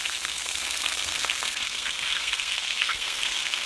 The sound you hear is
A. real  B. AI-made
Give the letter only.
B